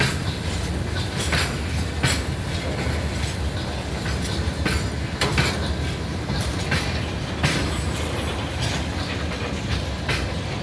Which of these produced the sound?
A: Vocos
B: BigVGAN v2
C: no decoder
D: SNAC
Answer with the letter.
C